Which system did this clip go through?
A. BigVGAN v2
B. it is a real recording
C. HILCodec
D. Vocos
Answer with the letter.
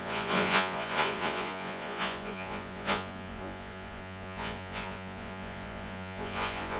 D